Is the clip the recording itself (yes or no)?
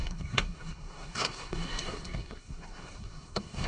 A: no